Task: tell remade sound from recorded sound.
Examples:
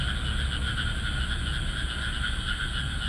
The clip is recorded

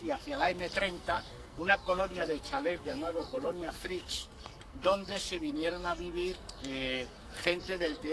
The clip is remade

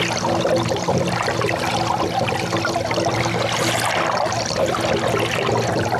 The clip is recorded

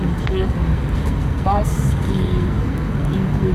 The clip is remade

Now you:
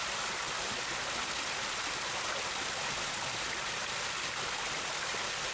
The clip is recorded